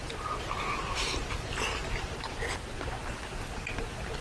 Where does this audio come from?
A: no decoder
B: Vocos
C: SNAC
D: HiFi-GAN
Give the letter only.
A